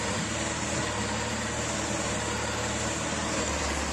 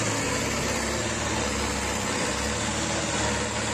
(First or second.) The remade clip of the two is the first